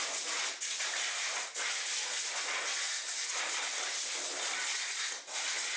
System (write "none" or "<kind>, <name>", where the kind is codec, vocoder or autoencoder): none